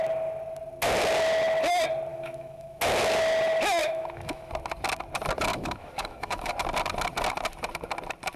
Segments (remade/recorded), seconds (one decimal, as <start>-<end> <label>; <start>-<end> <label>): 0.0-2.1 recorded; 2.1-2.8 remade; 2.8-3.8 recorded; 3.8-4.5 remade; 4.5-5.5 recorded; 5.5-6.5 remade; 6.5-8.4 recorded